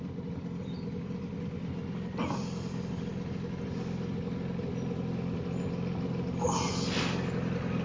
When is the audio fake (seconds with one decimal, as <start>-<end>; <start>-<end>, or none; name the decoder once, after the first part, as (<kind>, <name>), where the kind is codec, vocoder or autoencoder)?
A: none